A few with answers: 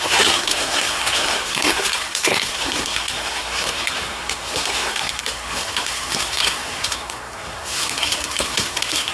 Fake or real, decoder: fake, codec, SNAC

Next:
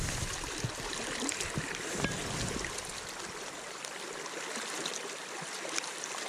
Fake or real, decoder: real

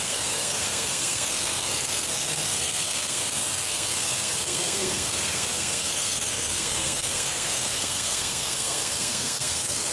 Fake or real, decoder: fake, codec, SNAC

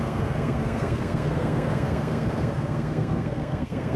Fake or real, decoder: fake, codec, SNAC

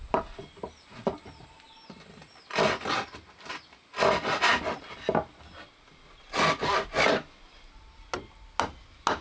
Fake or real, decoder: real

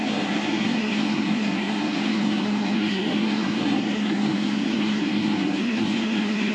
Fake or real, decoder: fake, codec, SNAC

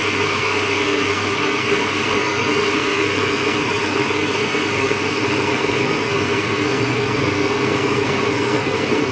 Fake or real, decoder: fake, codec, SNAC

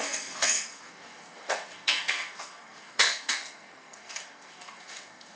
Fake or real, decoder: fake, codec, SNAC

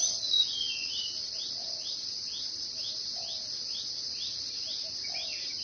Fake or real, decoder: real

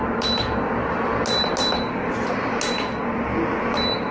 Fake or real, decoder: real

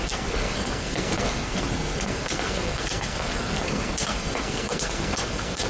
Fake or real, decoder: fake, codec, SNAC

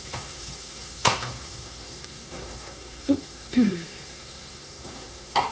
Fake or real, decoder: fake, codec, SNAC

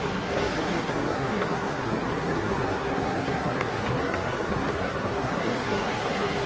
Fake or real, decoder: fake, codec, SNAC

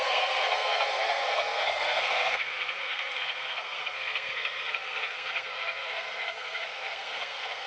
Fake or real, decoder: fake, codec, SNAC